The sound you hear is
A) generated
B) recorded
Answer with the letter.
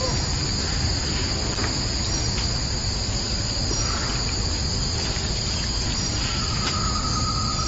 B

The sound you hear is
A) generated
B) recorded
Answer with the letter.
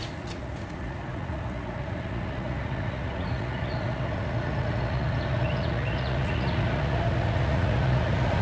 A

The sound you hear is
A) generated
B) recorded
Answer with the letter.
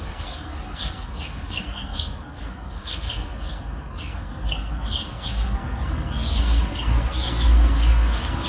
A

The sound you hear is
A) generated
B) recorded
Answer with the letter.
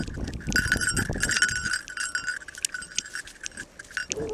B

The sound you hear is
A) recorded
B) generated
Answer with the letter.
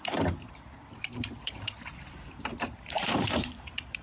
B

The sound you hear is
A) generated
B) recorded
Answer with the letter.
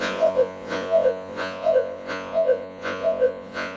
A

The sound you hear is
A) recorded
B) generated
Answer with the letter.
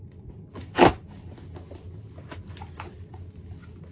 A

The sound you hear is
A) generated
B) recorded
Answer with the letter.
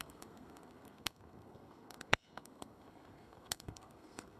A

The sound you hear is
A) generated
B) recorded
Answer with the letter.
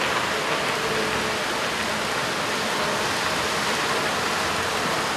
B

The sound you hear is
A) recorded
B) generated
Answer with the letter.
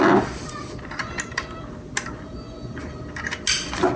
A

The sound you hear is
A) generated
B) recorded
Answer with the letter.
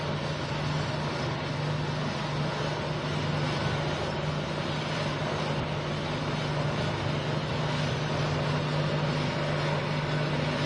B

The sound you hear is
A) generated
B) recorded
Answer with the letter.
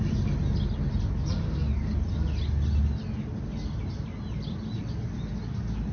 B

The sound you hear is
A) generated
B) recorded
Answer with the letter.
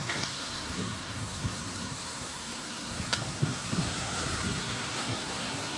A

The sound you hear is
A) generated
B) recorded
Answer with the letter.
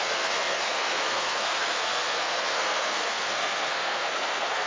A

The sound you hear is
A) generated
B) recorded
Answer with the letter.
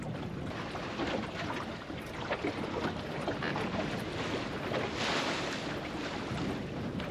B